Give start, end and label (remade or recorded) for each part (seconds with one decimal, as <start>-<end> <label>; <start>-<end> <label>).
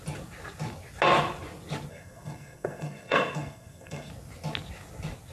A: 0.0-1.9 recorded; 1.9-4.1 remade; 4.1-5.3 recorded